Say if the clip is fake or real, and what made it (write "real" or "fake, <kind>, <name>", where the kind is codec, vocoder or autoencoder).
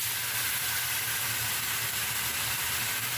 real